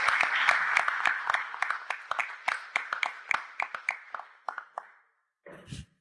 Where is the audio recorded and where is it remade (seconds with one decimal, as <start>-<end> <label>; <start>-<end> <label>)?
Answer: 0.0-2.2 recorded; 2.2-4.1 remade; 4.1-6.0 recorded